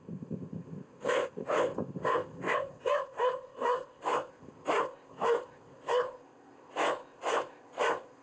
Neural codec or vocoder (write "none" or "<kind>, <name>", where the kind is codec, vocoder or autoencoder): codec, ZipCodec